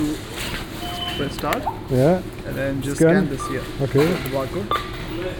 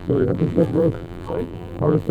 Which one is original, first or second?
first